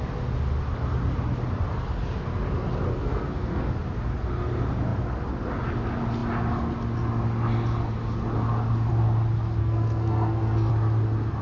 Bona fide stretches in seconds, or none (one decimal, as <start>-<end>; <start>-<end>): 0.0-2.9; 3.7-9.6; 10.7-11.4